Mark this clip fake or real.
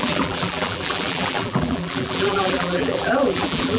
fake